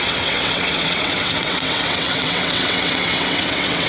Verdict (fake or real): fake